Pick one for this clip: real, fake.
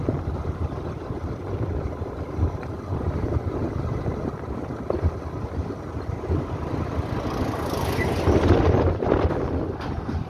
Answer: real